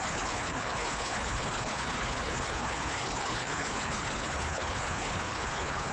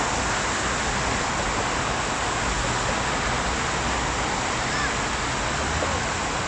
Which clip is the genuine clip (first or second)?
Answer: second